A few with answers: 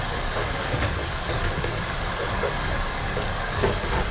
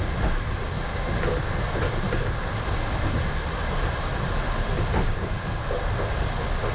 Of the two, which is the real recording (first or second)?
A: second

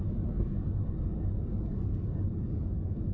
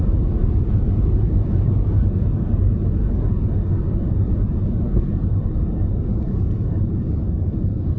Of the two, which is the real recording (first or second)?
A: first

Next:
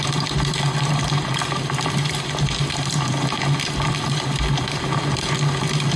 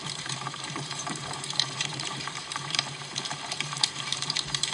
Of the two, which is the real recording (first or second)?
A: first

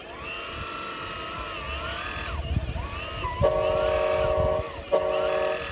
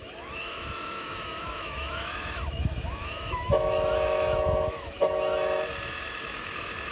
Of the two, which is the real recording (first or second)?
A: first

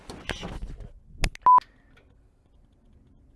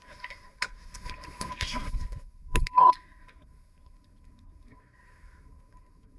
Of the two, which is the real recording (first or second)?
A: first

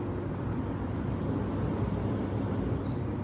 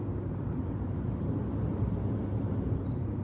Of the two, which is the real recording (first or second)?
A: first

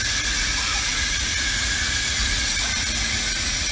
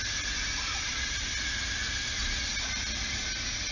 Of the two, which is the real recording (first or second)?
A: second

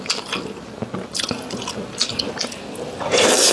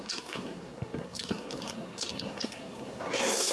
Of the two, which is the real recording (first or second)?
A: first